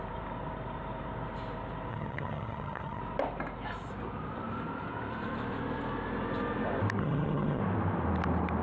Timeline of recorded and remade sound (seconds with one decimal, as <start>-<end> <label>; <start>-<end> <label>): 0.0-1.9 recorded; 1.9-3.0 remade; 3.0-7.0 recorded; 7.0-7.6 remade; 7.6-8.6 recorded